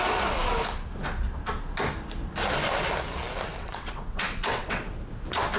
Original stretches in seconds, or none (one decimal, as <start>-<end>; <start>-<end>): 0.0-3.6; 4.9-5.6